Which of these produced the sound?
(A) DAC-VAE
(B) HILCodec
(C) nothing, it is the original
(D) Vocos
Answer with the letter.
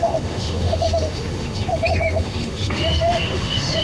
A